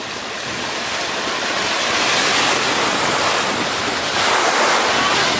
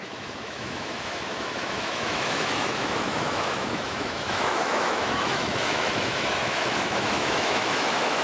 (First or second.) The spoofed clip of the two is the second